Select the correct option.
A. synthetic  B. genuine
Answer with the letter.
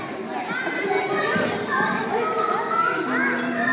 B